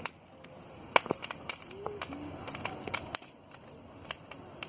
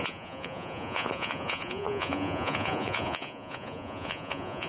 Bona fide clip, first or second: first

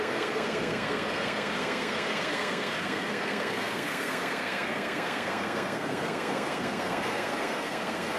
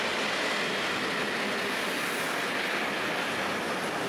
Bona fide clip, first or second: second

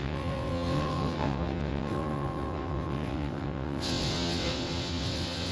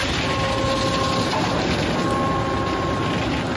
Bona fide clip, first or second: second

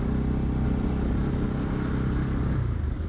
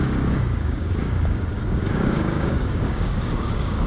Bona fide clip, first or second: first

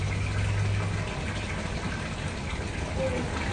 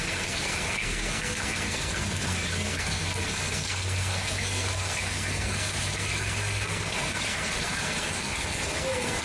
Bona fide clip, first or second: first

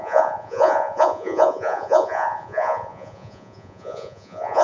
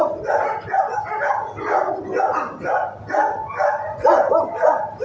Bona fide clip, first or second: second